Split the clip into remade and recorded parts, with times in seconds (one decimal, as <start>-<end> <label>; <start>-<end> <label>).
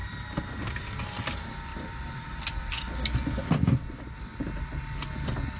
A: 0.0-0.7 remade; 0.7-1.7 recorded; 1.7-2.4 remade; 2.4-5.6 recorded